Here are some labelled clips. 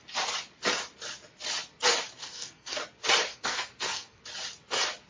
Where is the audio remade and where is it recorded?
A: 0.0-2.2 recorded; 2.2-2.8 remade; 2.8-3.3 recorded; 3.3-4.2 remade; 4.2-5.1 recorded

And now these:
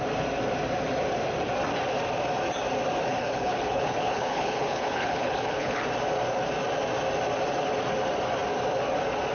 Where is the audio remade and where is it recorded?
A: 0.0-3.1 recorded; 3.1-5.8 remade; 5.8-9.3 recorded